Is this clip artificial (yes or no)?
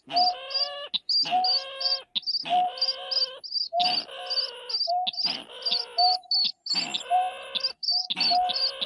no